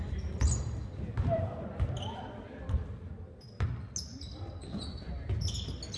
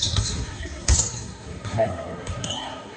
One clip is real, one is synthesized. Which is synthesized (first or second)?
second